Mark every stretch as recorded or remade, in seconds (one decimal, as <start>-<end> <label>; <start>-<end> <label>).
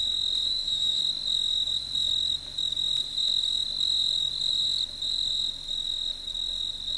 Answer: 0.0-0.5 recorded; 0.5-1.0 remade; 1.0-7.0 recorded